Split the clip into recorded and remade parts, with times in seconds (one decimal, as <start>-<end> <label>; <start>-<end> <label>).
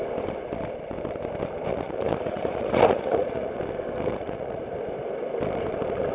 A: 0.0-1.7 recorded; 1.7-3.6 remade; 3.6-4.1 recorded; 4.1-4.6 remade; 4.6-6.1 recorded